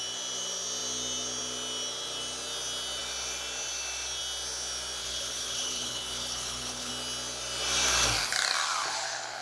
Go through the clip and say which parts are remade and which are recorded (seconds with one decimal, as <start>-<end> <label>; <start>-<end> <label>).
0.0-5.0 recorded; 5.0-6.9 remade; 6.9-9.4 recorded